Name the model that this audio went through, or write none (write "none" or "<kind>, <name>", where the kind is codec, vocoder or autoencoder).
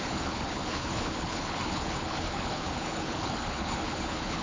codec, HILCodec